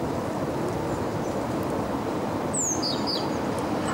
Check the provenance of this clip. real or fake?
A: real